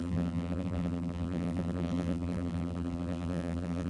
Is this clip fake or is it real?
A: fake